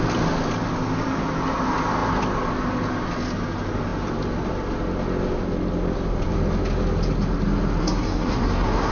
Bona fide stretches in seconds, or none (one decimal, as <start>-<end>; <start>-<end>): 0.0-7.8